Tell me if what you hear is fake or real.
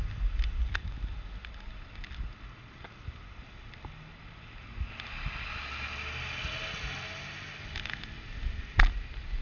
real